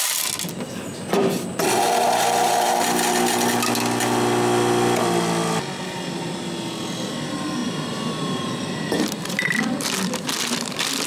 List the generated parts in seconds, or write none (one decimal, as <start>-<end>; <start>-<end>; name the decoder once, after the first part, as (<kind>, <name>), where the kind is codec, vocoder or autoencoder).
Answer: none